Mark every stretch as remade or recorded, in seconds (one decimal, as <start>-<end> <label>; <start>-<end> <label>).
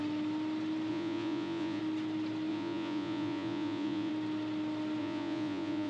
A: 0.0-0.9 recorded; 0.9-1.8 remade; 1.8-2.5 recorded; 2.5-4.1 remade; 4.1-5.0 recorded; 5.0-5.9 remade